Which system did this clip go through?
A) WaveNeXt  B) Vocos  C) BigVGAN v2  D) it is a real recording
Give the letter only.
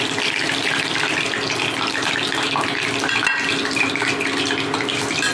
D